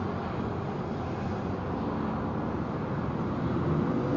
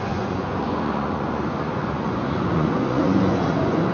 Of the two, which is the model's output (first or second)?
second